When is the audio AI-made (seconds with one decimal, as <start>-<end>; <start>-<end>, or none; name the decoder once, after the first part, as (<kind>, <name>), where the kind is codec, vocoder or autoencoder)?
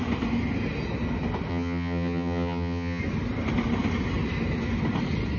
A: 1.5-3.0 (vocoder, HiFi-GAN)